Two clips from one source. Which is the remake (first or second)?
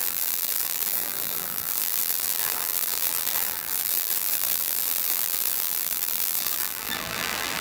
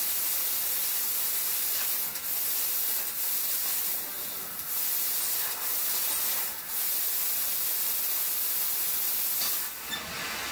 first